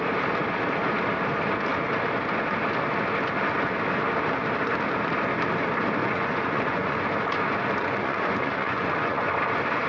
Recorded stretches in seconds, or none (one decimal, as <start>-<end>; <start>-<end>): 0.0-6.0; 7.0-7.8; 9.3-9.9